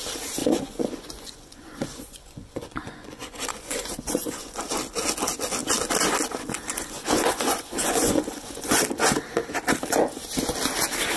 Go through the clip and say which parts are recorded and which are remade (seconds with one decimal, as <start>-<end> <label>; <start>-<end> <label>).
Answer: 0.0-0.4 recorded; 0.4-4.6 remade; 4.6-6.7 recorded; 6.7-8.8 remade; 8.8-11.2 recorded